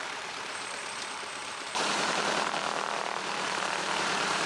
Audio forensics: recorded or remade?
remade